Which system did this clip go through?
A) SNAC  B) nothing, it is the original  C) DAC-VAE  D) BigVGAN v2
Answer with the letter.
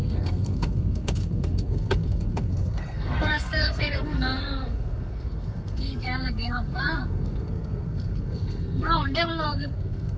A